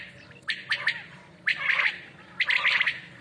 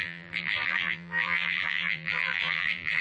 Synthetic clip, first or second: second